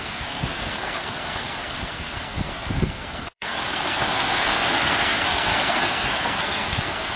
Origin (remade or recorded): remade